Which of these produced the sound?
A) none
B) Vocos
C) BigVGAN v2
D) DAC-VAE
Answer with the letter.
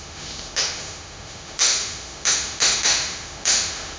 D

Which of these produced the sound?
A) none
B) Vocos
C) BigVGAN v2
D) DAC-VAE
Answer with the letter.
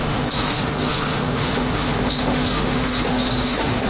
D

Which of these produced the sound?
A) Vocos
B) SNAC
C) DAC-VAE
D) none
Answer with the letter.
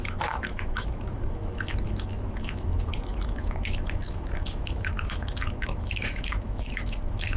C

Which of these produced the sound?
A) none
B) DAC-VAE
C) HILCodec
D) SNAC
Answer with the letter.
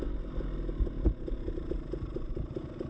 A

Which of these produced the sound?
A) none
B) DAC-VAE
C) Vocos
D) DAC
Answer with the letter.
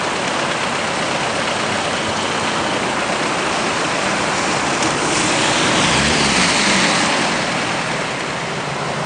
A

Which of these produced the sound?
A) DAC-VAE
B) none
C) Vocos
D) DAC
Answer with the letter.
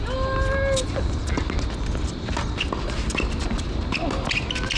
B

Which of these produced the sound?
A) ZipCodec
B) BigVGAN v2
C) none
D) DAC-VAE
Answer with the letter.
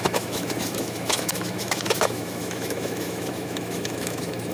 D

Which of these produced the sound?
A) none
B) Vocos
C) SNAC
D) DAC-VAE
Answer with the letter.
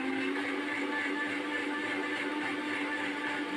A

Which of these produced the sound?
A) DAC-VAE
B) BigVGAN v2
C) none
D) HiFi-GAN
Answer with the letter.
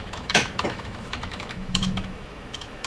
A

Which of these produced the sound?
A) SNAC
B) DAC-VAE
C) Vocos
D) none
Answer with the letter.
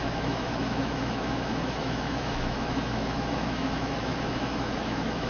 B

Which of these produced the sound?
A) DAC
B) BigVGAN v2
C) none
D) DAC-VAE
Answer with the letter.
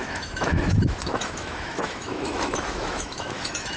D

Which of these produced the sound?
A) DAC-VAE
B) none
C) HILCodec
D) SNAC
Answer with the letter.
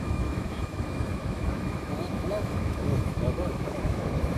A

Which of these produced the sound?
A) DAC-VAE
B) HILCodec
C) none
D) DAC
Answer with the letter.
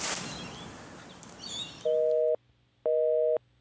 C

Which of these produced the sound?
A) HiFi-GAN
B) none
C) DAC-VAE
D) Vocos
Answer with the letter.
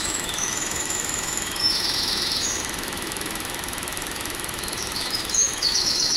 C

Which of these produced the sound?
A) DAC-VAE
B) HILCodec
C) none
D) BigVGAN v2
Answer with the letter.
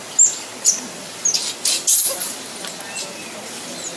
C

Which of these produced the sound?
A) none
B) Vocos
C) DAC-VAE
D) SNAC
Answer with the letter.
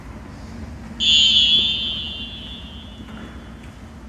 A